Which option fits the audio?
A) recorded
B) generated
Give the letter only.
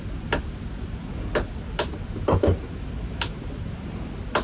A